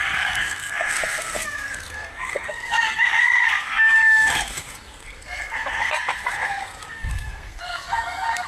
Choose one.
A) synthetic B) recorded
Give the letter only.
A